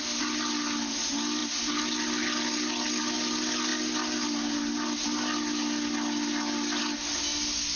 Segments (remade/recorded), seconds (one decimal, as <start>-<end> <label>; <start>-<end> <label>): 0.0-7.8 recorded